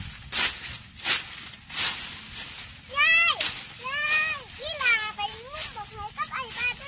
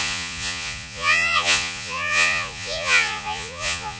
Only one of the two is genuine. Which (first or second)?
first